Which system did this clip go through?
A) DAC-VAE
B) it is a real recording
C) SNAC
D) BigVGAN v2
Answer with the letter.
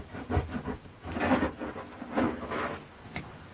B